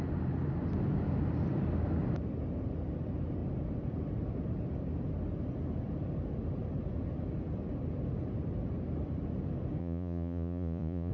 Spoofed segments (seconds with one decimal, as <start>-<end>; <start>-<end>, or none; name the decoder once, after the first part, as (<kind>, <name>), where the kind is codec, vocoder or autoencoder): 9.8-11.1 (vocoder, Vocos)